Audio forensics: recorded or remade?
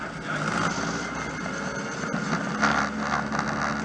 recorded